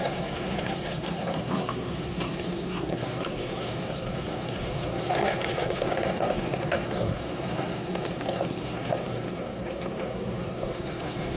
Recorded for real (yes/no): no